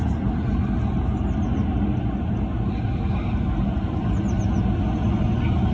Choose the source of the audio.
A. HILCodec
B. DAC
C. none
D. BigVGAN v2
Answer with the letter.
C